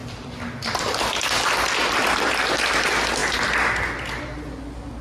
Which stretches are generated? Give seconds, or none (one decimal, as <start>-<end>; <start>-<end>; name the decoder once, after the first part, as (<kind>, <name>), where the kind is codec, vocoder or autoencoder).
0.0-0.8 (vocoder, BigVGAN v2)